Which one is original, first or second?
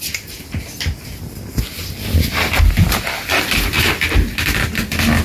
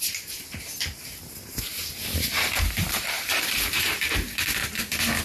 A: first